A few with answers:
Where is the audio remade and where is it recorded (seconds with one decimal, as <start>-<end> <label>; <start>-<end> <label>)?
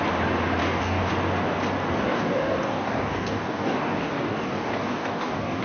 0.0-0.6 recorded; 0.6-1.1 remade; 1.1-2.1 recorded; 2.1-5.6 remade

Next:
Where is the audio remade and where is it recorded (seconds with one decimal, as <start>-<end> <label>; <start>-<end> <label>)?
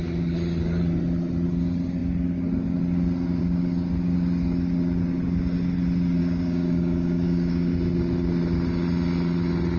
0.0-6.2 recorded; 6.2-7.7 remade; 7.7-9.8 recorded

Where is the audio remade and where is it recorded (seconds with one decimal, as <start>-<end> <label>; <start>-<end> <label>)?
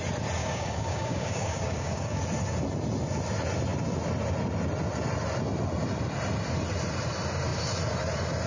0.0-0.4 recorded; 0.4-2.2 remade; 2.2-8.5 recorded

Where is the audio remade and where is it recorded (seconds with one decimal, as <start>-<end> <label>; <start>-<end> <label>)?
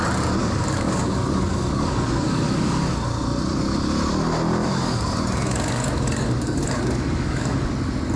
0.0-0.4 recorded; 0.4-2.9 remade; 2.9-4.6 recorded; 4.6-7.7 remade; 7.7-8.2 recorded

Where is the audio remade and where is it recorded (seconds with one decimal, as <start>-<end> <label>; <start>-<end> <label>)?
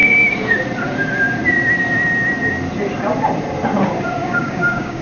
0.0-4.2 recorded; 4.2-5.0 remade